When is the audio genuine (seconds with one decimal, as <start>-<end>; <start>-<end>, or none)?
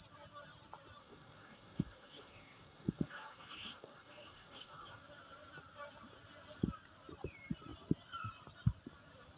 0.0-1.0; 5.0-9.4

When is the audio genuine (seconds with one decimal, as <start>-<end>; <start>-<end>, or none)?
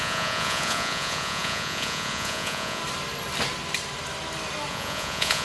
2.8-4.7